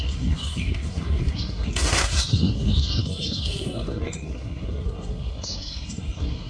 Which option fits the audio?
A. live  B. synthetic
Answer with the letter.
B